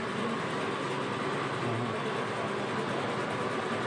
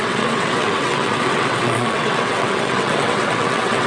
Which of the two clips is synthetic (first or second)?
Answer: second